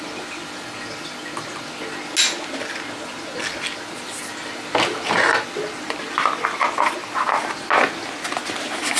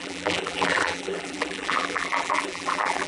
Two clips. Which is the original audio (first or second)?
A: first